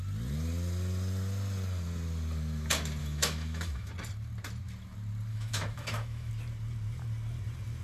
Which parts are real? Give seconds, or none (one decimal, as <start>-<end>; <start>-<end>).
0.0-3.0; 3.9-5.3; 6.3-7.8